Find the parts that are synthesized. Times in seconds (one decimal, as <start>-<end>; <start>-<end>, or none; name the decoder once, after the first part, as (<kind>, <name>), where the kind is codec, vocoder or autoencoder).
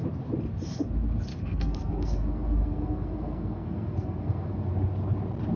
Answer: 1.3-4.7 (codec, SNAC)